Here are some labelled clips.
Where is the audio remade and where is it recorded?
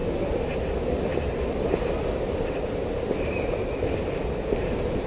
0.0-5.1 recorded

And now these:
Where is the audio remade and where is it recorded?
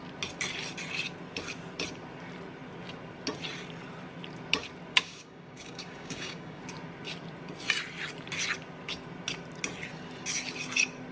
0.0-4.9 recorded; 4.9-6.6 remade; 6.6-11.1 recorded